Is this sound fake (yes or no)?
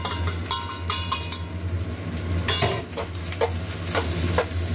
no